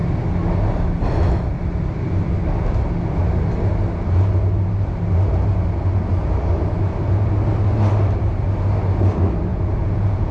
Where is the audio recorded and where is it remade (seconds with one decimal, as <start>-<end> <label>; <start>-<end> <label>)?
0.0-9.5 recorded; 9.5-10.3 remade